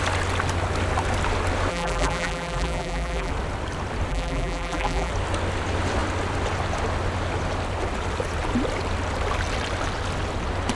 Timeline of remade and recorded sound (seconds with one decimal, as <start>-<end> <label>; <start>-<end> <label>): 0.0-1.7 recorded; 1.7-3.3 remade; 3.3-4.1 recorded; 4.1-5.1 remade; 5.1-10.8 recorded